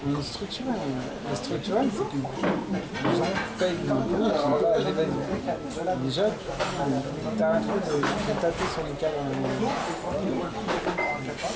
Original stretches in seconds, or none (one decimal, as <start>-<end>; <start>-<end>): 0.0-11.6